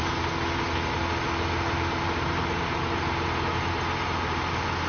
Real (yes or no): yes